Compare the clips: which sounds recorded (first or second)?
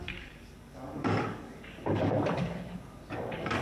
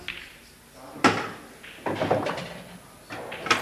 second